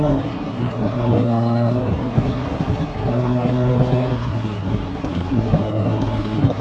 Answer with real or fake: fake